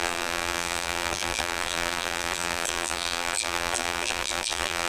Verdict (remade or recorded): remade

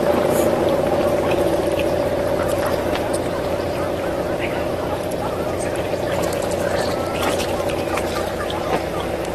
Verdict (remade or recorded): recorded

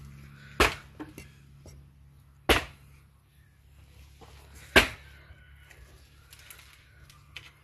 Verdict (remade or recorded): recorded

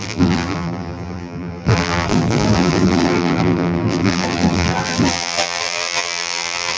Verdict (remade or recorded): remade